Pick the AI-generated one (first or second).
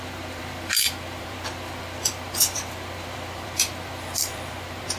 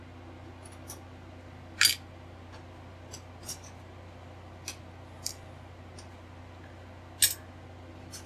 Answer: first